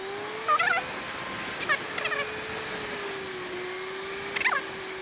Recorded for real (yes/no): yes